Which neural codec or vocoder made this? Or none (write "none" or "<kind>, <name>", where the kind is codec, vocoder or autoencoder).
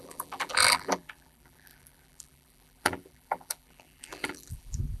vocoder, BigVGAN v2